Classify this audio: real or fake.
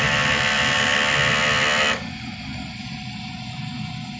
real